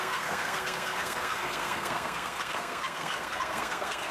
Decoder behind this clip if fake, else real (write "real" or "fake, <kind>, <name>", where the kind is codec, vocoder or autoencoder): fake, codec, SNAC